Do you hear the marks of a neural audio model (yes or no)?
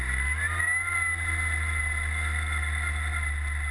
no